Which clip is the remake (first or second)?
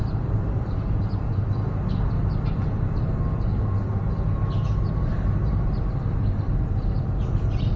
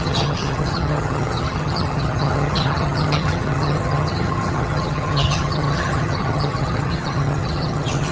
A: second